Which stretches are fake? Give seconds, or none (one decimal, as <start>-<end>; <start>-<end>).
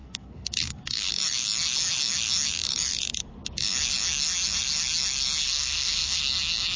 0.0-1.1; 5.4-6.2